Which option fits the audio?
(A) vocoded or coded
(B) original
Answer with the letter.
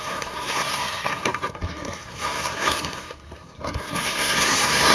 A